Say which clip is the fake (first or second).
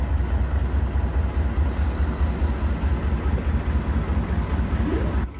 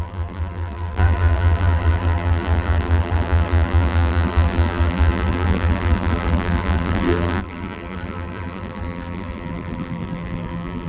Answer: second